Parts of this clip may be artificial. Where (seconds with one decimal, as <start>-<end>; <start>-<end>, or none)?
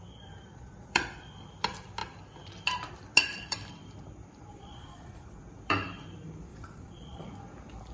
0.5-1.2; 4.5-5.4; 6.5-7.3